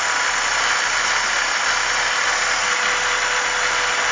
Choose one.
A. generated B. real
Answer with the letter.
B